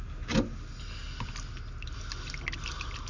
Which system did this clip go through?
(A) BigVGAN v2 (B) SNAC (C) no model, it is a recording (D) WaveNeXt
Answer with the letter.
C